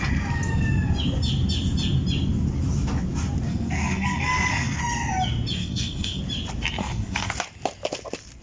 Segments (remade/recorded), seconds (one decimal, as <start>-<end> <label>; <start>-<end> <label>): 0.0-3.5 recorded; 3.5-4.8 remade; 4.8-5.6 recorded; 5.6-6.2 remade; 6.2-6.8 recorded; 6.8-7.3 remade; 7.3-8.4 recorded